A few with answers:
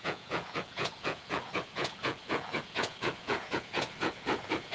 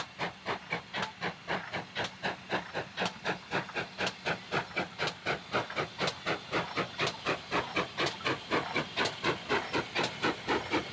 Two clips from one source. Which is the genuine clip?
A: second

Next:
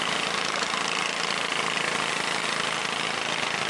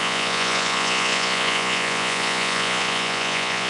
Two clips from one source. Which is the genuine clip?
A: first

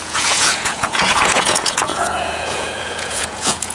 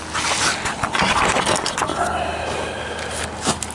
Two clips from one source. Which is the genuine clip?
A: second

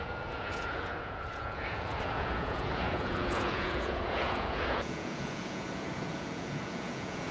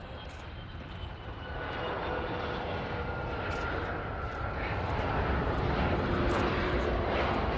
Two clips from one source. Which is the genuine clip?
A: second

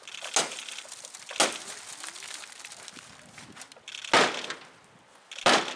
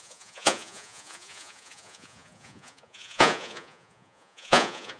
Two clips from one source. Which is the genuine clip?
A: first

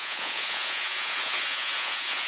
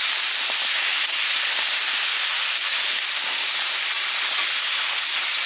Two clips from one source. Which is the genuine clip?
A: second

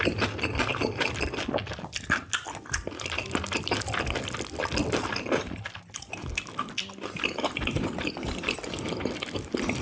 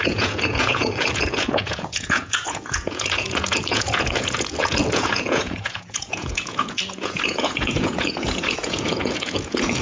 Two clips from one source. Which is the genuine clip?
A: first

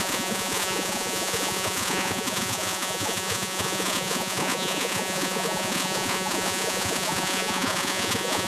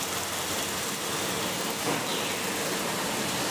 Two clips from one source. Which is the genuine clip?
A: second